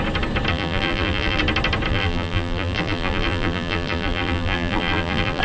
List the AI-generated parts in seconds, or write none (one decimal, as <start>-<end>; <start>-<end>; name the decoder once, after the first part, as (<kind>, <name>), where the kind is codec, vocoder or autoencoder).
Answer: 0.5-1.4 (vocoder, BigVGAN v2); 1.9-5.4